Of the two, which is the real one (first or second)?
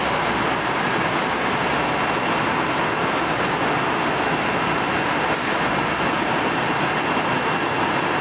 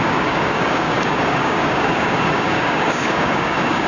first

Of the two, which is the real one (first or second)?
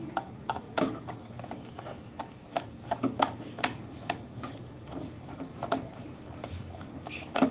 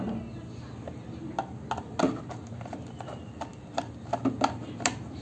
second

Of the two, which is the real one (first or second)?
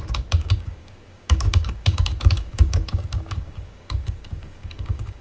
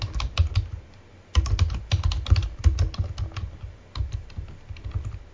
second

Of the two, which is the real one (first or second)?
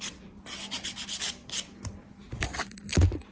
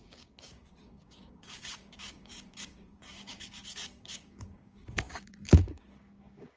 first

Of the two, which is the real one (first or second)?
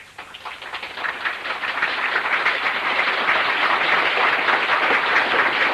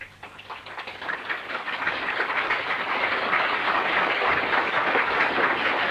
first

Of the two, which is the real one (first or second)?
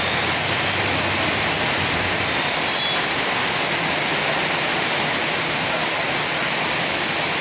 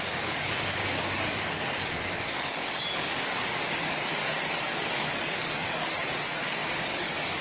first